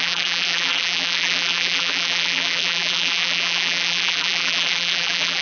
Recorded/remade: remade